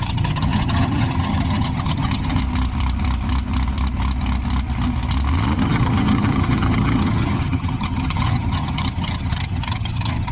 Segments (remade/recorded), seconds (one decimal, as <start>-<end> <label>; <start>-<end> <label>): 0.0-2.4 remade; 2.4-5.6 recorded; 5.6-10.3 remade